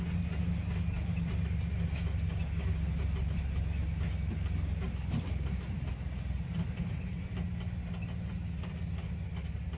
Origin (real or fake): real